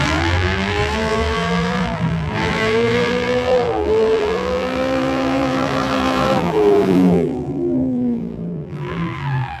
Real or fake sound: fake